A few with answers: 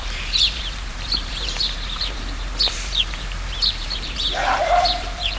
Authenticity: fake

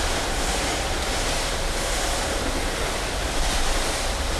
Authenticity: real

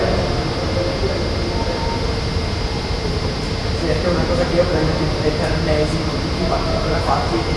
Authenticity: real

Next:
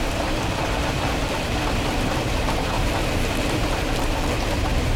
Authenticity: fake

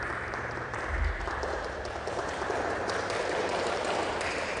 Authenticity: fake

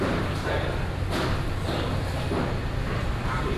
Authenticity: real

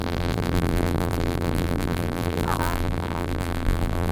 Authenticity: fake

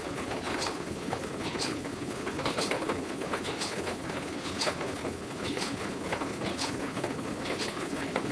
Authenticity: fake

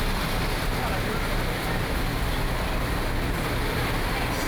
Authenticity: real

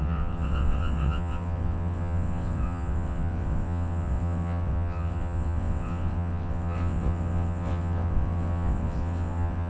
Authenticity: fake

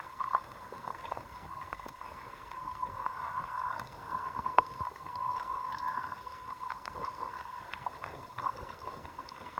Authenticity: fake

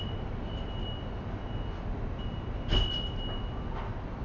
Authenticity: real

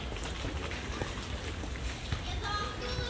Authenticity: real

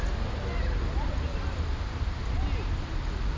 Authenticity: real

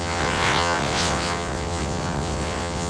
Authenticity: fake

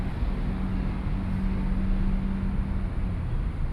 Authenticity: real